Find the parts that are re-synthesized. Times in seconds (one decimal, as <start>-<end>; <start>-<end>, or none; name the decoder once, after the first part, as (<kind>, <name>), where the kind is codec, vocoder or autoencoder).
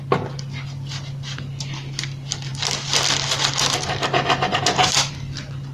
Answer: none